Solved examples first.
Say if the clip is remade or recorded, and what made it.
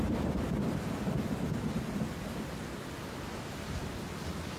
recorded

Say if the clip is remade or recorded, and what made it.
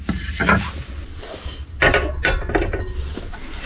recorded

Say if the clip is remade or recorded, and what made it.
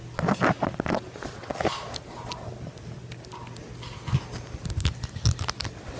recorded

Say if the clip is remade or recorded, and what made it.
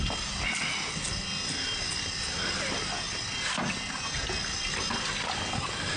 recorded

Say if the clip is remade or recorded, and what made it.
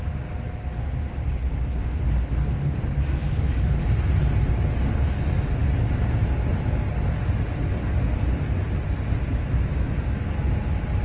recorded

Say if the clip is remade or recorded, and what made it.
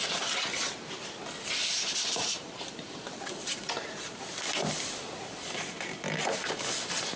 recorded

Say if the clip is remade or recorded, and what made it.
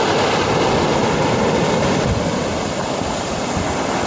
recorded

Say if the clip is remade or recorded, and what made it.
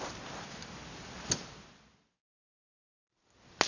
recorded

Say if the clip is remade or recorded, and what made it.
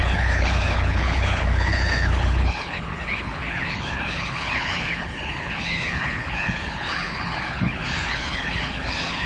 remade, codec, HILCodec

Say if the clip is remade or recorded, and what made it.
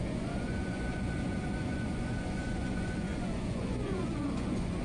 remade, vocoder, Vocos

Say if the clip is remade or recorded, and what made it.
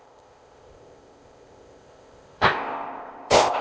remade, codec, ZipCodec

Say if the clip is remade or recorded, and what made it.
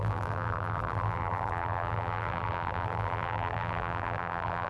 remade, vocoder, BigVGAN v2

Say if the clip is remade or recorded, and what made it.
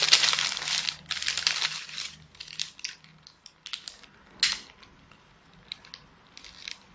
recorded